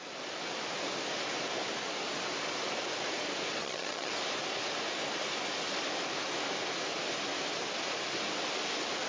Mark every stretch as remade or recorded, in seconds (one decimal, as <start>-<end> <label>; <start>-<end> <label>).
0.0-3.6 recorded; 3.6-4.1 remade; 4.1-9.1 recorded

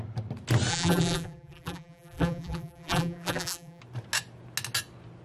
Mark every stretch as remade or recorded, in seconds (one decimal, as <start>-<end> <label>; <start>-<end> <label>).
0.0-0.7 recorded; 0.7-3.8 remade; 3.8-5.2 recorded

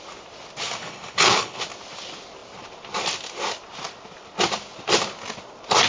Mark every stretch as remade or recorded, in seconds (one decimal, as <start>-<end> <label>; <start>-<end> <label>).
0.0-0.8 recorded; 0.8-1.6 remade; 1.6-5.9 recorded